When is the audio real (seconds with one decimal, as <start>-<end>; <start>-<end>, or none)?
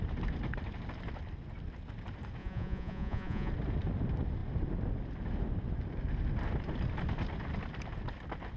0.0-2.4; 3.5-8.6